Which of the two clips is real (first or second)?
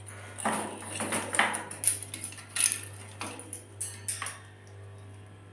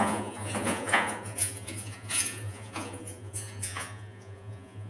first